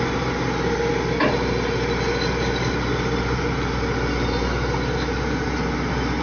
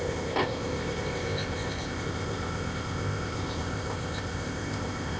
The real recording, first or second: first